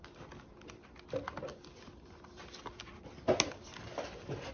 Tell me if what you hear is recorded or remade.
recorded